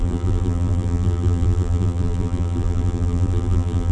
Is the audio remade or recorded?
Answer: remade